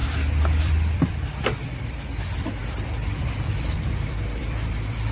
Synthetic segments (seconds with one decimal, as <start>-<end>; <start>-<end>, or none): 0.6-2.6; 3.2-5.1